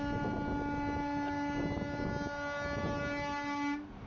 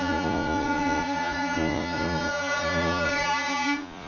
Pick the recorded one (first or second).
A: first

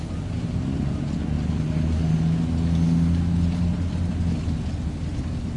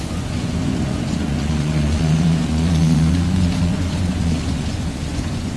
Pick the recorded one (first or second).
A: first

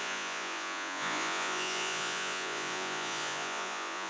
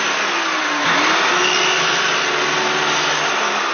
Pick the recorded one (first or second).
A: second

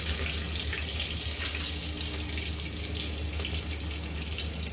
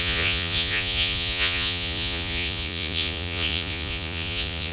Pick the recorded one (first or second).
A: first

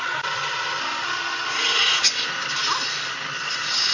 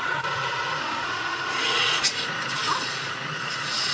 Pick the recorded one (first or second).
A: first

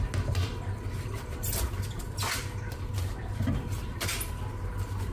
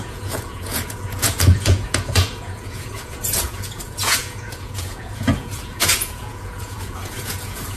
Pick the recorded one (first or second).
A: first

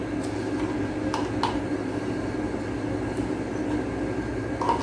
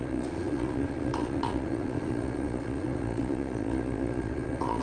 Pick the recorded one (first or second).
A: first